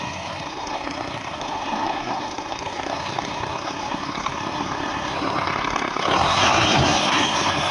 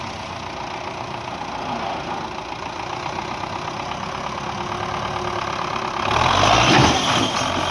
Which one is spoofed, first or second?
first